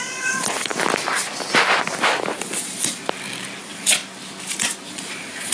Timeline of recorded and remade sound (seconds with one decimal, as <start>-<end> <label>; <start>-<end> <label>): 0.0-0.7 remade; 0.7-2.3 recorded; 2.3-3.0 remade; 3.0-3.6 recorded; 3.6-4.0 remade; 4.0-4.9 recorded; 4.9-5.5 remade